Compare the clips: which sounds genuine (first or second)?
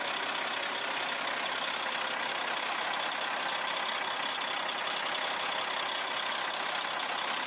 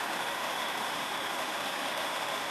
first